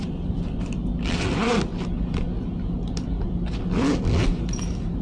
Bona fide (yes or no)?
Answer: yes